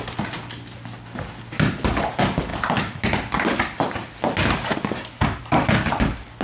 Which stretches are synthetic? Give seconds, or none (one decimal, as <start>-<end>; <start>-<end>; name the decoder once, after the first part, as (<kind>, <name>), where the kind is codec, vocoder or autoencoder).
none

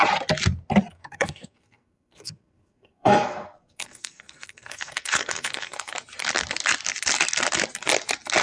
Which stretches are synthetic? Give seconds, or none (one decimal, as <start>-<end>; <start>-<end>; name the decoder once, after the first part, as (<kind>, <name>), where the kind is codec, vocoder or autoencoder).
0.9-5.9 (codec, SNAC)

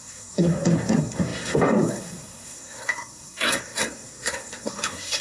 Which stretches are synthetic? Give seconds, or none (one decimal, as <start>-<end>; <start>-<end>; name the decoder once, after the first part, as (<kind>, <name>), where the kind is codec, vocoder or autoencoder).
0.0-5.2 (codec, SNAC)